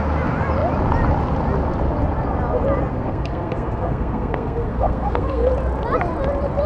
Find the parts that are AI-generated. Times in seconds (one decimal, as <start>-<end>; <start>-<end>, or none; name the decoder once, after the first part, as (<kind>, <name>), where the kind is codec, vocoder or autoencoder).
2.9-5.5 (codec, SNAC)